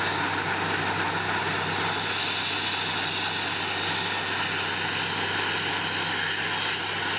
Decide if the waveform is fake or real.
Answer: real